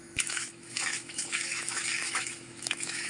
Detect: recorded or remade remade